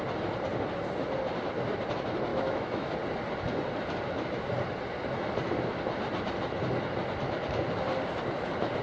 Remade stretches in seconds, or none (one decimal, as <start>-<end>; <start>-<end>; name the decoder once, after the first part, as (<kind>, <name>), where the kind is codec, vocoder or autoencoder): 2.3-2.9 (autoencoder, DAC-VAE)

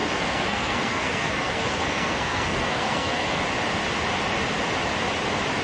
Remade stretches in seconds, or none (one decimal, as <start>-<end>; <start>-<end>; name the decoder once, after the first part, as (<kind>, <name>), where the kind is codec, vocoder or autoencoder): 0.0-3.4 (codec, SNAC)

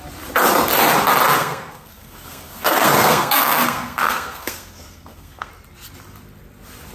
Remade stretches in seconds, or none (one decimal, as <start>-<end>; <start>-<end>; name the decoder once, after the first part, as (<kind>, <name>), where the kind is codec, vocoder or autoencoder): 1.4-5.5 (codec, SNAC)